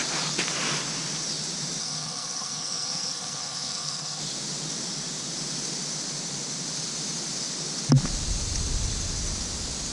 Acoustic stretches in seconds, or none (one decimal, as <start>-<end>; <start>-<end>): 0.0-1.8; 4.2-9.9